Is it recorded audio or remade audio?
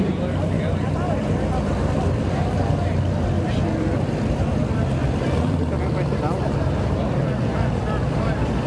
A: remade